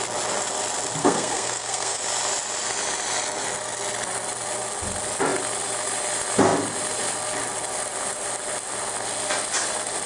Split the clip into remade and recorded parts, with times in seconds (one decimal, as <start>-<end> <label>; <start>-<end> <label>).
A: 0.0-1.0 recorded; 1.0-2.0 remade; 2.0-10.1 recorded